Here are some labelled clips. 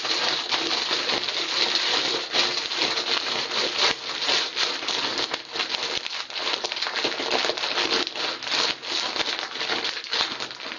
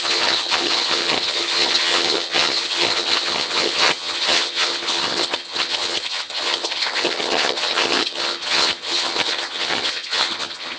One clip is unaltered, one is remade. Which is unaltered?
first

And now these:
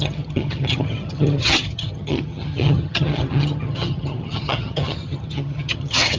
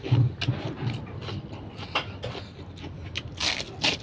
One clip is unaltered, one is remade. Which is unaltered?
second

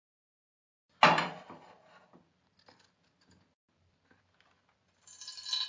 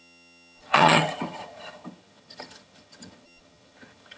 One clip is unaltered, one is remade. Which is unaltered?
first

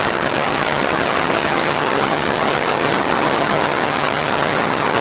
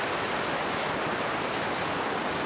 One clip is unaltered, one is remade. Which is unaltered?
second